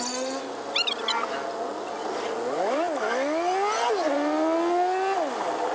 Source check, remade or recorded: recorded